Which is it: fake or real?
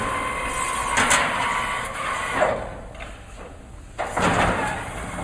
real